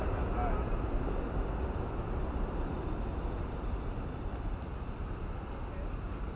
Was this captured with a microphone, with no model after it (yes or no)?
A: yes